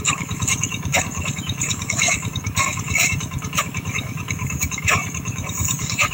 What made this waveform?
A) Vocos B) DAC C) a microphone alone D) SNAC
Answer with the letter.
B